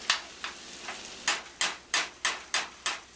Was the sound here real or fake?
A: real